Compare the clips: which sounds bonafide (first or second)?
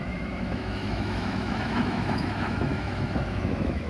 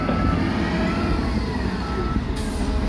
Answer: second